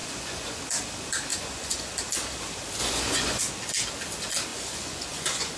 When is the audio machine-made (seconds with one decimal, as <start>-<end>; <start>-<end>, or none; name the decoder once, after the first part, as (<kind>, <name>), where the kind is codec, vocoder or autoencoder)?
0.0-0.6 (vocoder, Vocos); 1.3-1.9; 2.8-3.4; 4.5-5.6